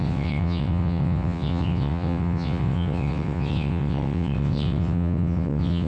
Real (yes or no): no